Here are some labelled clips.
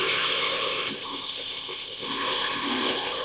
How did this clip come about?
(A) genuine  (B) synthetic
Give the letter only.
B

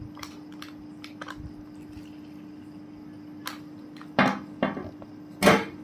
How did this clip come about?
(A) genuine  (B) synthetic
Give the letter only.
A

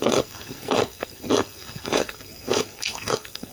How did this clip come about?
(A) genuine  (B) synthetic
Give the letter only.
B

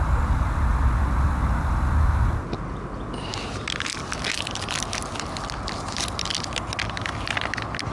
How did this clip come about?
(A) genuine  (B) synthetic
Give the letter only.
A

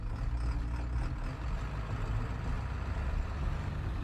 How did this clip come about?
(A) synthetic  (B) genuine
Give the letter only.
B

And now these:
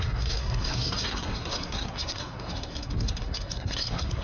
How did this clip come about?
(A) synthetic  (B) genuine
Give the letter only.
A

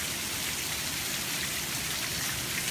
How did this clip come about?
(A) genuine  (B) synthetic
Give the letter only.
A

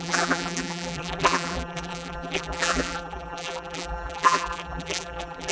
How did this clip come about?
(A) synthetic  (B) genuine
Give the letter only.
A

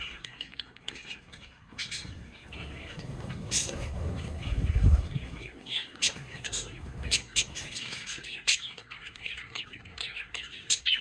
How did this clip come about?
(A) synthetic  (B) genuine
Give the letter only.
A